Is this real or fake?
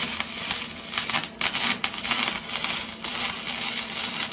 real